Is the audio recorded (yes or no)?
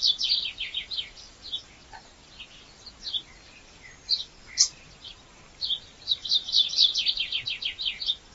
yes